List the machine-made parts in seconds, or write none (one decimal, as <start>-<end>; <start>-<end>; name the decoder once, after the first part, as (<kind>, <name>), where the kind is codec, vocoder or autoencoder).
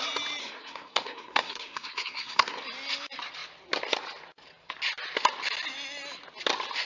0.4-2.6 (codec, SNAC)